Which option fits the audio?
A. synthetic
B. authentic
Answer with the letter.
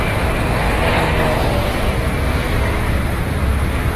B